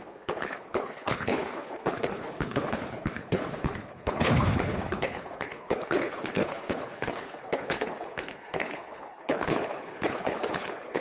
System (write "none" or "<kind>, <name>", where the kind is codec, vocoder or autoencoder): codec, HILCodec